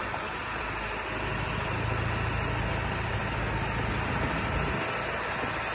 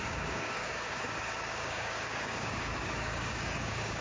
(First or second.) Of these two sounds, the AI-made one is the second